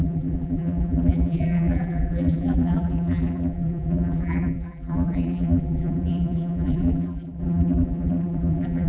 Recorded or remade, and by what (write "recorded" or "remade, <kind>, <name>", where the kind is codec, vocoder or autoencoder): remade, vocoder, BigVGAN v2